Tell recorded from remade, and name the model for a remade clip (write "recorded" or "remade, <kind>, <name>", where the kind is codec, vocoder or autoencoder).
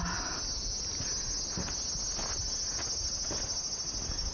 recorded